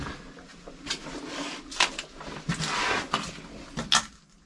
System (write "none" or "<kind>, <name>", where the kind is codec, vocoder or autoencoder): none